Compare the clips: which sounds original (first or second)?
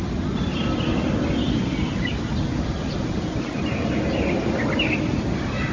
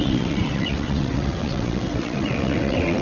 first